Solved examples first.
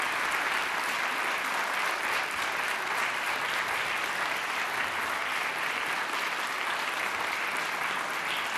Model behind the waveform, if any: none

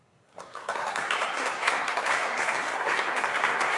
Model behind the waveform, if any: codec, SNAC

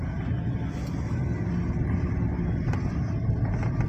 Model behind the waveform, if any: none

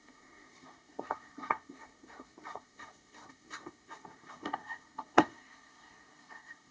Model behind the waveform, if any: codec, SNAC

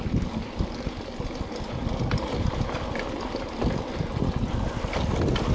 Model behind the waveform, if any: none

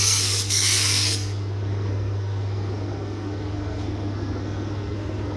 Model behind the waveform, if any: codec, SNAC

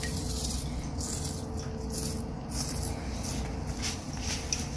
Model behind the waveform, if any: none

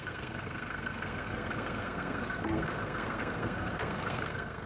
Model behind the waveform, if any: codec, SNAC